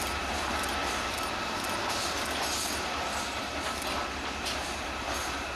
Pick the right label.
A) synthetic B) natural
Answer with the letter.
B